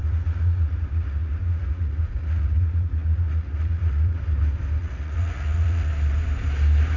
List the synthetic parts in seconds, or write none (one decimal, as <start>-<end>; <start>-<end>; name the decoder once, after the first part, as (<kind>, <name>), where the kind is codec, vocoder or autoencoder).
0.0-4.2 (vocoder, Vocos); 4.8-5.9